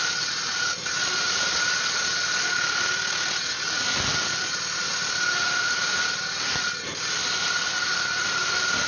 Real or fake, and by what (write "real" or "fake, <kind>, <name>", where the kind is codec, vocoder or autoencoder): real